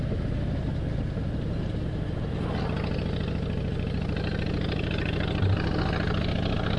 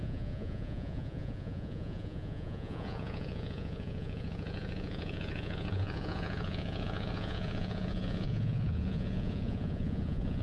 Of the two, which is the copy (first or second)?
second